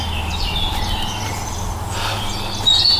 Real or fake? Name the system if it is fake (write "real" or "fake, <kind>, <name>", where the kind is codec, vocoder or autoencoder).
real